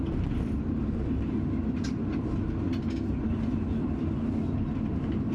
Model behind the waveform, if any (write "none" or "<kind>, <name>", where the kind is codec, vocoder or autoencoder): none